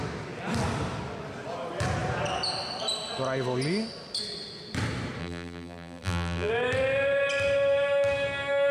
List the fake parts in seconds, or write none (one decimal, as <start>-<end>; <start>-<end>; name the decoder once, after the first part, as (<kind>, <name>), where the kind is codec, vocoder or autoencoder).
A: 5.2-6.5 (vocoder, BigVGAN v2)